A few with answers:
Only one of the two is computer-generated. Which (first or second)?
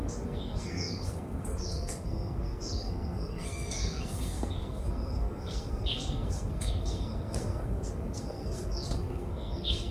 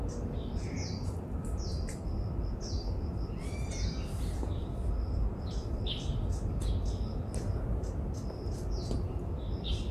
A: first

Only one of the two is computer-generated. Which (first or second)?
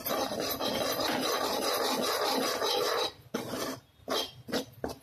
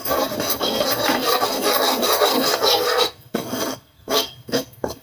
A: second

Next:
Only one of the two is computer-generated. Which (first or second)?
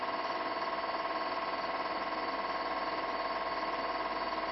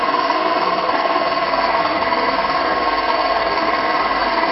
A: second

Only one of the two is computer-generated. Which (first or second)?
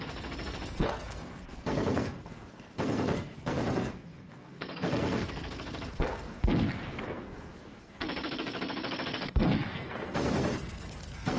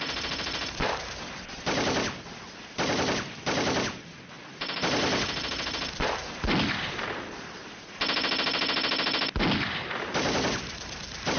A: first